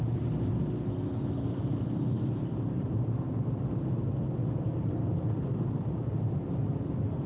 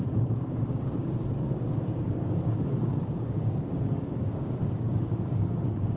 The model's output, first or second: second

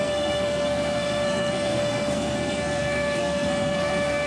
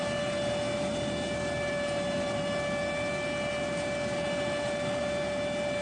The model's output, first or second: first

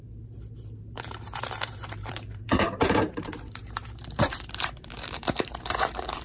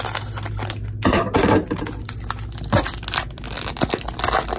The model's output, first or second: first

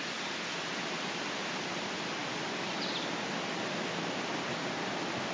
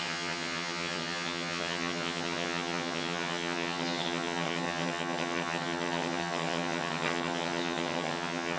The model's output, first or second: second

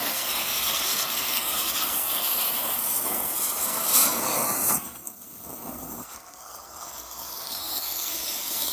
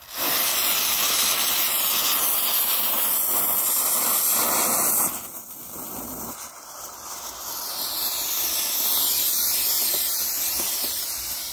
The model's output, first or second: first